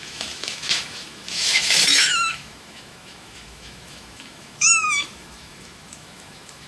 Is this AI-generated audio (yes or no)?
yes